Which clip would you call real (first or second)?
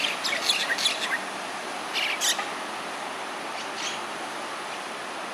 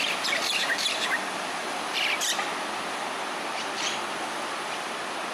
first